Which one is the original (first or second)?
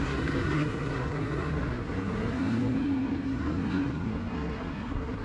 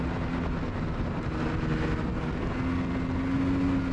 second